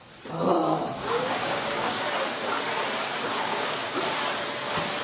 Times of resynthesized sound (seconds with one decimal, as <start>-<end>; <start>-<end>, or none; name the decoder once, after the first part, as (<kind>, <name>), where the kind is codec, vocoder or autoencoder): 0.6-2.1 (codec, DAC); 3.3-3.9